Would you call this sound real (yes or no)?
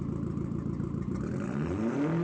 no